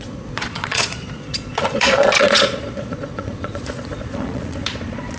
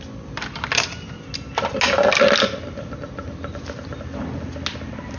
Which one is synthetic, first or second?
first